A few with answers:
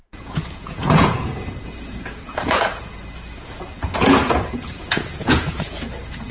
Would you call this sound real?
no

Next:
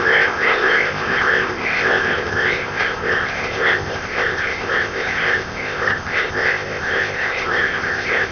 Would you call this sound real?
no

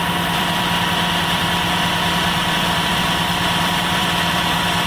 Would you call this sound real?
no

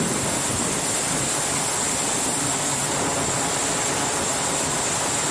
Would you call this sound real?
no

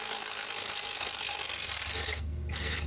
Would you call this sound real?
no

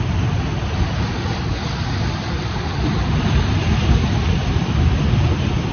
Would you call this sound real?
yes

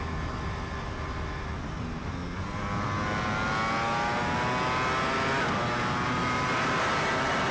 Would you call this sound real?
yes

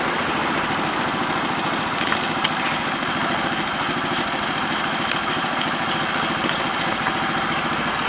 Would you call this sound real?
yes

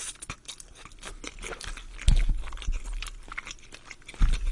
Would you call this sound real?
yes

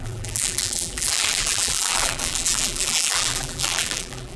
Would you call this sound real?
no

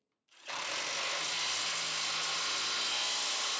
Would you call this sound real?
yes